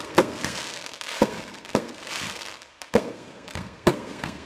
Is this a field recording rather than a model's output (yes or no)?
no